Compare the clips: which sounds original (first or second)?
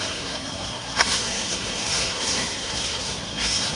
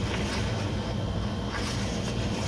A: second